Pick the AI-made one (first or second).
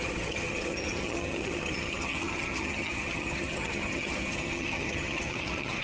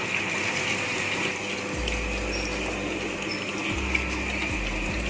first